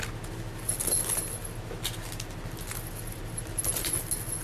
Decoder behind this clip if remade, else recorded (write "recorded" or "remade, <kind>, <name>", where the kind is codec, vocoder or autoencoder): recorded